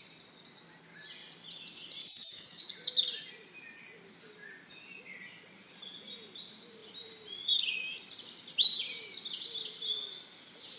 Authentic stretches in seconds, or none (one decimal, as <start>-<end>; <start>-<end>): 0.0-2.0; 2.7-10.8